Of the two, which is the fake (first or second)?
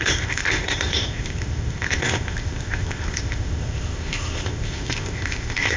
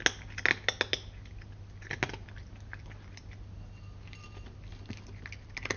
first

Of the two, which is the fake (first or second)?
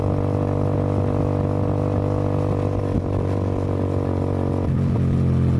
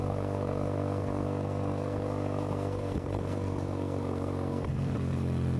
second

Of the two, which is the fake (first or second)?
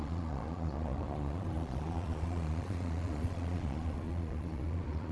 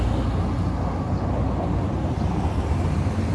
first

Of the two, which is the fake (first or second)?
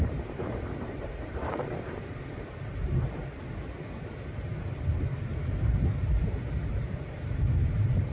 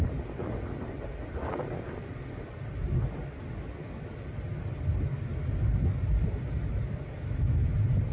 first